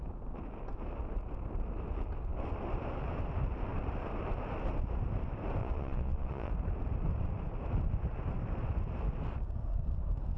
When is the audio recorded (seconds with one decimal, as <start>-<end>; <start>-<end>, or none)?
0.0-5.6; 6.5-10.4